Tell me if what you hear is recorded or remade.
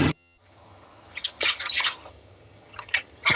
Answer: remade